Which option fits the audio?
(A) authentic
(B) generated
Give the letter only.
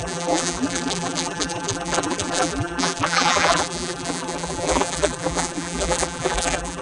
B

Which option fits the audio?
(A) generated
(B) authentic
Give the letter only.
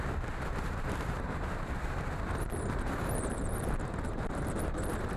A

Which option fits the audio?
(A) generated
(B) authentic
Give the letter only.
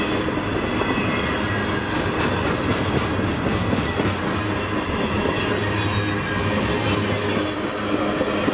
B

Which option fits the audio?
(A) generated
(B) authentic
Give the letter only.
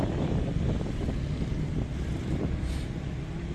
A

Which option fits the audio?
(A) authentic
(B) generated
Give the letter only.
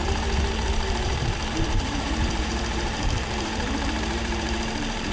B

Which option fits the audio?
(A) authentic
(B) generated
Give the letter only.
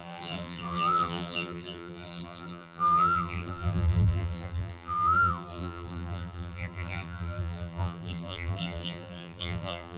B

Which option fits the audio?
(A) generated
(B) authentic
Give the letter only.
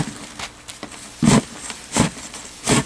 B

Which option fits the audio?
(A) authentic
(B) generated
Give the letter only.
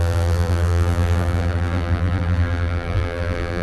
B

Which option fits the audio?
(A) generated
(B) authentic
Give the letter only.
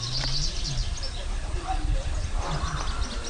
B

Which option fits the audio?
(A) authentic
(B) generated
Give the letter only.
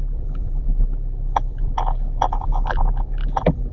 B